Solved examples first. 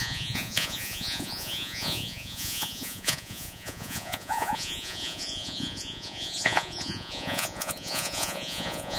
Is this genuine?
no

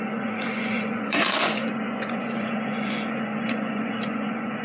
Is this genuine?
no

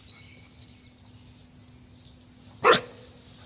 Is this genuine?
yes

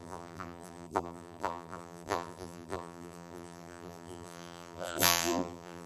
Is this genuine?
no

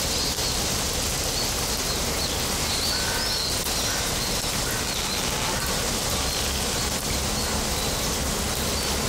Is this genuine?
yes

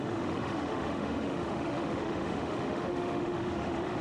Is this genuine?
no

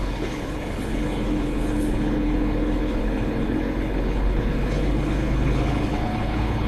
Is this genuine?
no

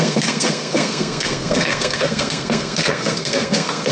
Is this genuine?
no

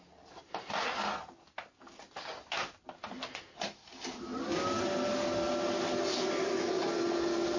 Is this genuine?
yes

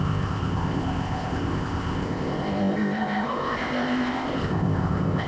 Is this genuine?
no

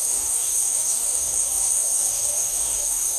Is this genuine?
no